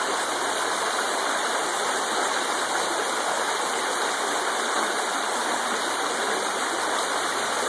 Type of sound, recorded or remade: recorded